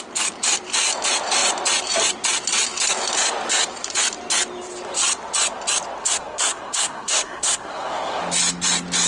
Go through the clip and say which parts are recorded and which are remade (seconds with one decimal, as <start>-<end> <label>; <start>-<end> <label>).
0.0-6.0 recorded; 6.0-8.2 remade; 8.2-9.1 recorded